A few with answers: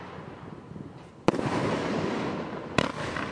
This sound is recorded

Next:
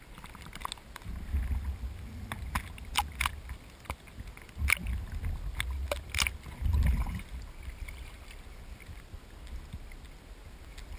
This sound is recorded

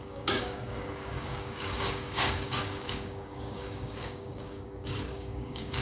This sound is remade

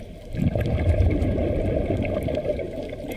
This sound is remade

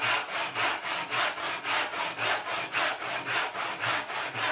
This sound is recorded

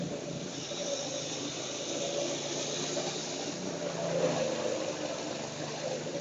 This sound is recorded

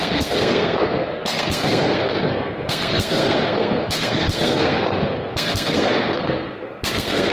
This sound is remade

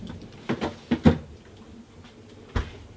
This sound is recorded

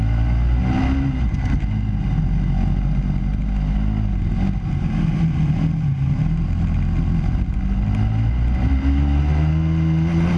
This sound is recorded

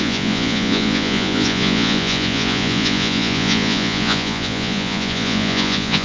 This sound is remade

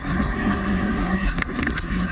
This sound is remade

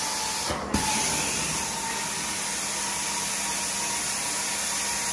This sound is recorded